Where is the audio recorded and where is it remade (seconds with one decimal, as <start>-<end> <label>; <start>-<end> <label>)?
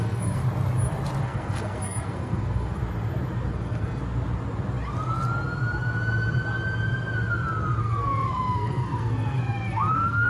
0.0-0.4 remade; 0.4-1.2 recorded; 1.2-2.8 remade; 2.8-3.5 recorded; 3.5-4.0 remade; 4.0-7.8 recorded; 7.8-10.3 remade